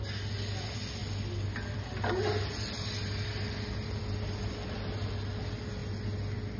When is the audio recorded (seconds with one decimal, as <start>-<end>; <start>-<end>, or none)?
0.0-6.6